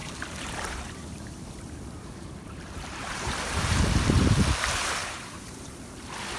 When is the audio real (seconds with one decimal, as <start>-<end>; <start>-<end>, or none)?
3.8-5.0; 5.7-6.4